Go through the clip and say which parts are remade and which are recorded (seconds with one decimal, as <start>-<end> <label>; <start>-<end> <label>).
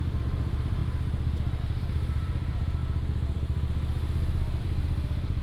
0.0-0.8 remade; 0.8-1.6 recorded; 1.6-2.8 remade; 2.8-4.6 recorded; 4.6-5.4 remade